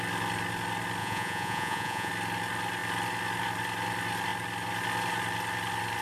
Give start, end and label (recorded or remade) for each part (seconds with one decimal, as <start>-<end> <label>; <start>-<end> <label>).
0.0-1.0 recorded; 1.0-2.1 remade; 2.1-6.0 recorded